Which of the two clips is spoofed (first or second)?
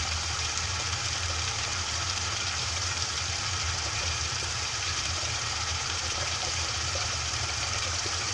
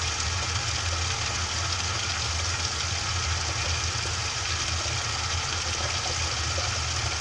first